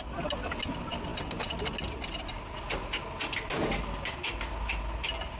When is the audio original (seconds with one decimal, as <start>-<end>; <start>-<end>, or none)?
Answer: 0.0-5.4